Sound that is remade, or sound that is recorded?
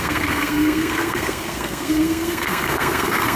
remade